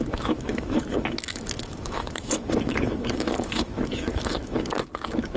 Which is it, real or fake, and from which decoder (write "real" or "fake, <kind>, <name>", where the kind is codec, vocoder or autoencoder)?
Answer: fake, autoencoder, DAC-VAE